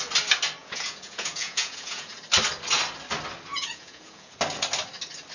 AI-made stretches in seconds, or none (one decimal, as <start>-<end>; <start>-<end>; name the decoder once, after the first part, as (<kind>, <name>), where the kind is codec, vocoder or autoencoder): 0.6-2.2 (vocoder, Vocos); 3.5-4.3